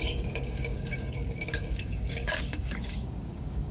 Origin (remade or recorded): remade